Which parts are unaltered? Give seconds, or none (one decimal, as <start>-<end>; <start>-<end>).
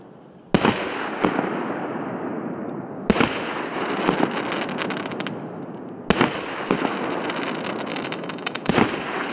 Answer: 0.0-7.9; 8.7-9.3